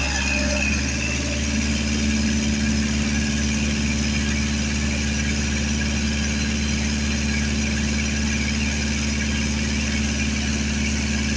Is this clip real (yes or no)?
yes